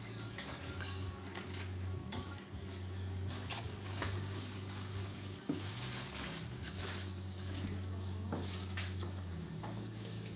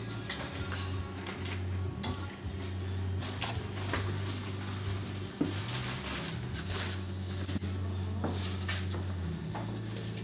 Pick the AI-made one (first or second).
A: first